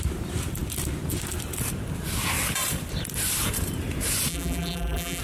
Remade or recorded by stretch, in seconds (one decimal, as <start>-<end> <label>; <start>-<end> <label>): 0.0-4.3 recorded; 4.3-5.2 remade